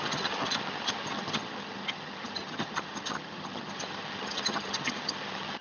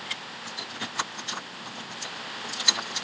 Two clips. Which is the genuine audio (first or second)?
second